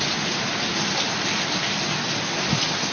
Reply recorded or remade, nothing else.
recorded